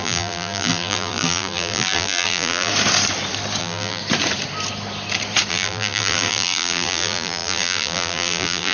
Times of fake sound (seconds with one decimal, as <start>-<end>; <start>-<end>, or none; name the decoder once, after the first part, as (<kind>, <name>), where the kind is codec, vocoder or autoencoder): 0.0-2.7 (vocoder, BigVGAN v2); 3.6-4.0; 5.5-8.7